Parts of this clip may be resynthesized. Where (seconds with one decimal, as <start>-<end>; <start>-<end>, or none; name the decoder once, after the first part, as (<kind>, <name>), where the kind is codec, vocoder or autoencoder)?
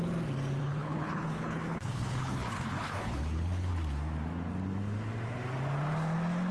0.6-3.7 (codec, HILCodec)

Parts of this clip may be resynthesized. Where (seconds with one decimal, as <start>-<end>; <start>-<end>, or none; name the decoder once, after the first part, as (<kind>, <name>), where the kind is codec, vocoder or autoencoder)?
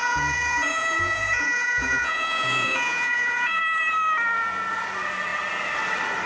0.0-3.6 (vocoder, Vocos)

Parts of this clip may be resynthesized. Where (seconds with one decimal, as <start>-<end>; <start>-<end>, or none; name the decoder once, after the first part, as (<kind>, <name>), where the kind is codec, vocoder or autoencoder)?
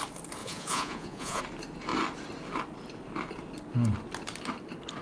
0.4-1.4 (vocoder, Vocos)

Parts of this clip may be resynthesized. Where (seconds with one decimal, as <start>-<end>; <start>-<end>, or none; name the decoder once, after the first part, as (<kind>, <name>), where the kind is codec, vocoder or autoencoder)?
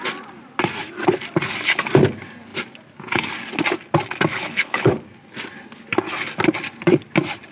4.3-4.9 (codec, HILCodec)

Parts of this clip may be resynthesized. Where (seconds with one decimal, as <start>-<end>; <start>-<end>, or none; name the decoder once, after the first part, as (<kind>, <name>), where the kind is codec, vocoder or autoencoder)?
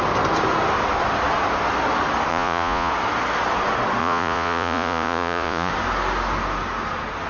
2.3-2.9 (vocoder, Vocos); 4.0-5.7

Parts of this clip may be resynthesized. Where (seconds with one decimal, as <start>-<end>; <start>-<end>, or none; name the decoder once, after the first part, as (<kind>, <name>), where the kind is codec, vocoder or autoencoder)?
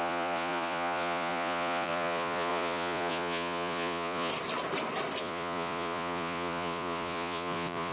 0.0-4.3 (vocoder, Vocos); 5.2-7.9